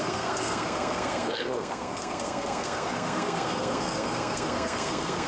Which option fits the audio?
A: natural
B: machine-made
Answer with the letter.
B